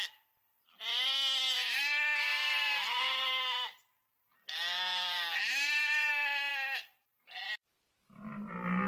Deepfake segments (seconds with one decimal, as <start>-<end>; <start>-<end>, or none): 0.9-1.8; 2.3-6.1; 6.5-8.5